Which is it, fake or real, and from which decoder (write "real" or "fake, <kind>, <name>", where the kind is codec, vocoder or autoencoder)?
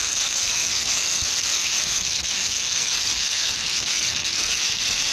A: fake, codec, SNAC